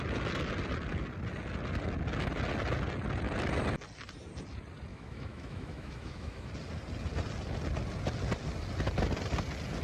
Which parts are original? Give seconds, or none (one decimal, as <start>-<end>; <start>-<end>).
0.0-4.9; 6.5-9.8